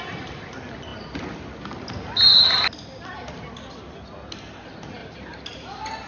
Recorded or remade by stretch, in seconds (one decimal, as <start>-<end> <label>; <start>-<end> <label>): 0.0-5.0 recorded; 5.0-6.1 remade